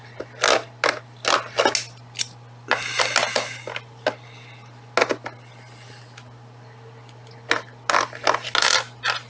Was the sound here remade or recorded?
recorded